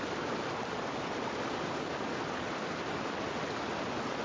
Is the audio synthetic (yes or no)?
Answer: no